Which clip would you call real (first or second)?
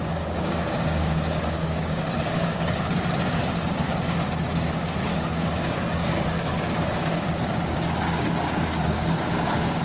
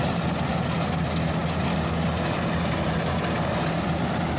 second